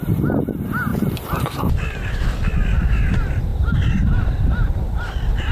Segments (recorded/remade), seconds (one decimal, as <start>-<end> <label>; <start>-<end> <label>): 0.0-0.9 recorded; 0.9-1.7 remade; 1.7-5.5 recorded